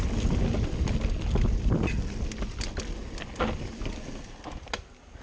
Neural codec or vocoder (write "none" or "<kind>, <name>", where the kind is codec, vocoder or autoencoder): none